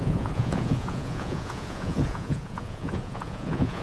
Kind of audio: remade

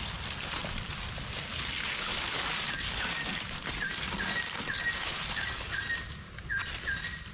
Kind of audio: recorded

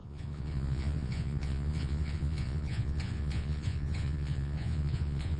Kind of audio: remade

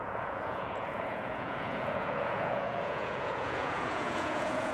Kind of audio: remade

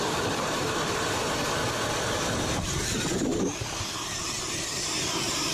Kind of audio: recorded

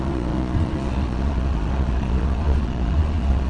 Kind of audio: remade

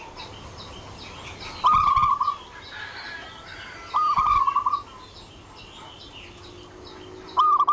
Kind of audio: recorded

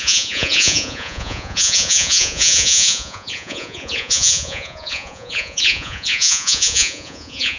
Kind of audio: remade